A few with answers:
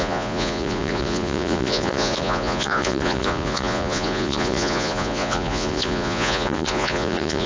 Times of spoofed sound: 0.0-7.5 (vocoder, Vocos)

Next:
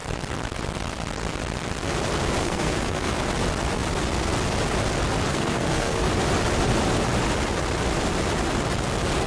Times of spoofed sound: 2.4-3.1 (codec, SNAC); 5.3-6.0